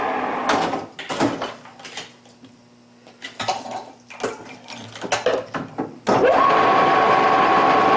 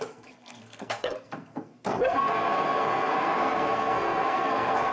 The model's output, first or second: second